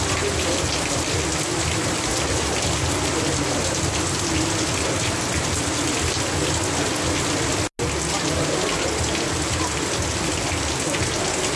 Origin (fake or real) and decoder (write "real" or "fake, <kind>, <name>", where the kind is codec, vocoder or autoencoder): real